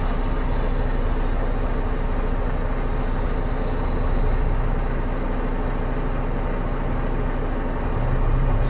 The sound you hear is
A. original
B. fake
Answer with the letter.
A